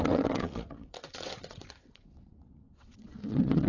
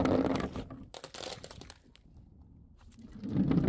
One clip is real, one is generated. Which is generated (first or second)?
first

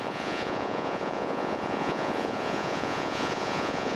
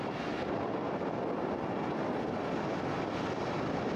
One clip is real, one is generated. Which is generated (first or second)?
first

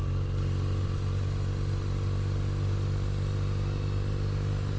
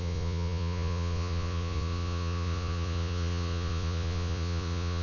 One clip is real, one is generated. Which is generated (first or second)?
second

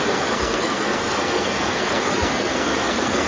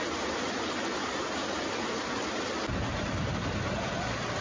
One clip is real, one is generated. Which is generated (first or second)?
first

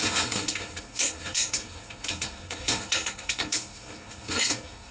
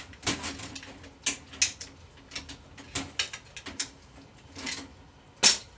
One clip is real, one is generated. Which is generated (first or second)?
first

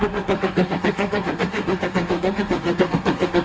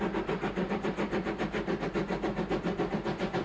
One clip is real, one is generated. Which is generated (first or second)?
first